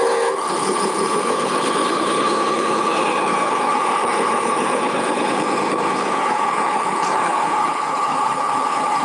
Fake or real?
fake